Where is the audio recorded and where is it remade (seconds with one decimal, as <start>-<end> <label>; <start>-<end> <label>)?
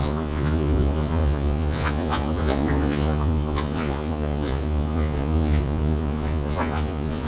0.0-7.3 remade